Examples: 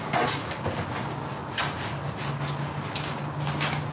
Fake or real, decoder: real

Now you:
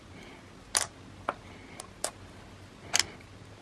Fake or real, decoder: real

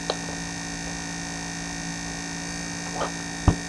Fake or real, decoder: real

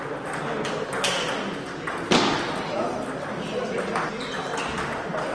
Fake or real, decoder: real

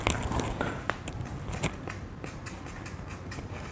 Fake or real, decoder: real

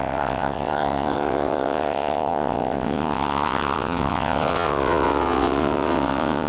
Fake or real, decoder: fake, vocoder, WaveNeXt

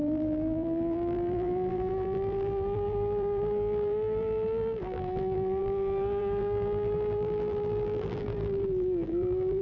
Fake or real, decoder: fake, vocoder, BigVGAN v2